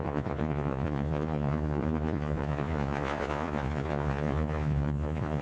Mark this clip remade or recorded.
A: remade